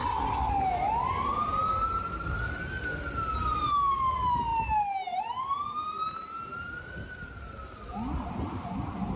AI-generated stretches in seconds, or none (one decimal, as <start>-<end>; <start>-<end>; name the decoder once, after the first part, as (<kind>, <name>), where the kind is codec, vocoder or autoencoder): 0.0-0.5 (codec, SNAC)